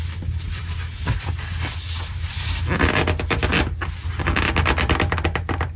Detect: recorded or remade recorded